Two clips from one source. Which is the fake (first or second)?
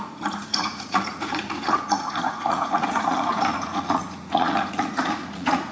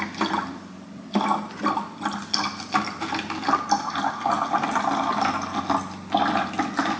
first